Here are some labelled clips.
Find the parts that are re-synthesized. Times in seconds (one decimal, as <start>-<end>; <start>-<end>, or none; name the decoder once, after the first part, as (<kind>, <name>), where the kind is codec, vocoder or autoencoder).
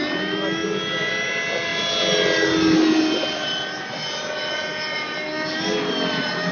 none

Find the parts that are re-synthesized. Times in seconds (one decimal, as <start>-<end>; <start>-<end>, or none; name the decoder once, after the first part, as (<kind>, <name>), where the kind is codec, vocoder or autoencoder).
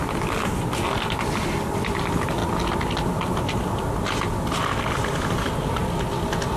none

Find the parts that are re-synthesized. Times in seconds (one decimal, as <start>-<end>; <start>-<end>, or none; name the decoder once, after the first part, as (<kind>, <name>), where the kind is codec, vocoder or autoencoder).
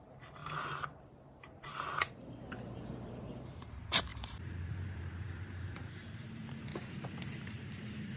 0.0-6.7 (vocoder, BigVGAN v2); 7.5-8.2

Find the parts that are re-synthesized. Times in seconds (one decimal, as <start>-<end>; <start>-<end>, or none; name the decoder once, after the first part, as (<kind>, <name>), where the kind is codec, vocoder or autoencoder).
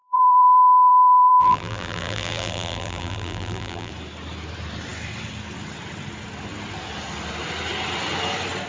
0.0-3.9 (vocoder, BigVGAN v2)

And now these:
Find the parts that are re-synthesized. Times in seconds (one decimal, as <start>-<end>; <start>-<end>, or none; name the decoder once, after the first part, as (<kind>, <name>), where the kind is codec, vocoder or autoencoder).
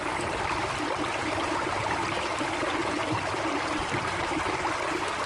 1.1-2.2 (vocoder, BigVGAN v2); 2.8-4.3